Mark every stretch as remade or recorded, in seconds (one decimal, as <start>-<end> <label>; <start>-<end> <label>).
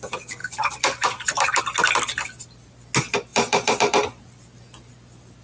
0.0-0.4 recorded; 0.4-1.6 remade; 1.6-3.3 recorded; 3.3-4.2 remade; 4.2-5.4 recorded